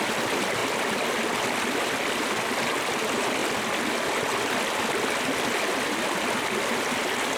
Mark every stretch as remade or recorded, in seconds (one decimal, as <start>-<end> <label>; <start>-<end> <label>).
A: 0.0-7.4 recorded